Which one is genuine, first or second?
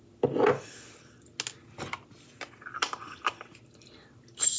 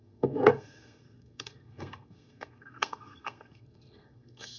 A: first